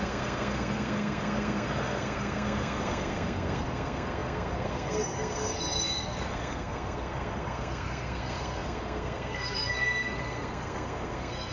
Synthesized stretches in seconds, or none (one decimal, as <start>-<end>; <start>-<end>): 0.0-11.5